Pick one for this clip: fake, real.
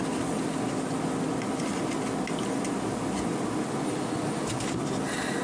real